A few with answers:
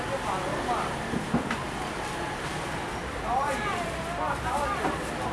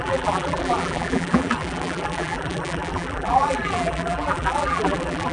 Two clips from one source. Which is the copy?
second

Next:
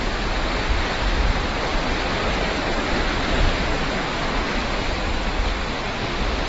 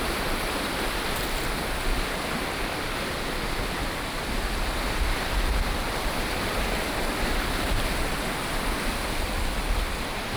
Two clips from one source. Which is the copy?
second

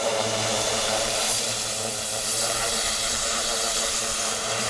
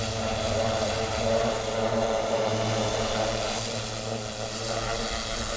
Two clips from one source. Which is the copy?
first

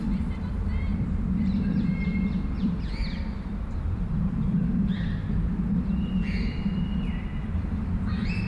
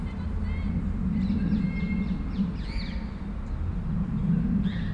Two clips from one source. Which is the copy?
first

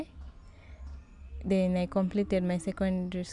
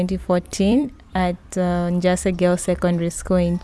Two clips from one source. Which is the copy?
second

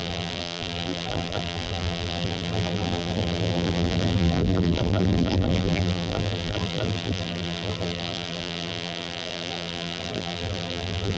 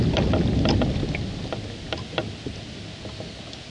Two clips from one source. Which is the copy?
first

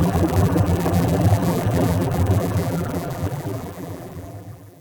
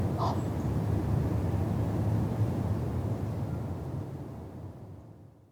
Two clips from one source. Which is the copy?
first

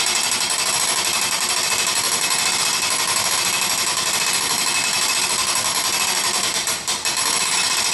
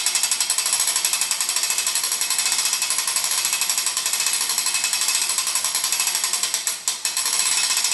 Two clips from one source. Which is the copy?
first